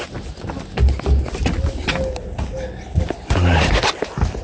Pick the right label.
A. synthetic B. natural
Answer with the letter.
B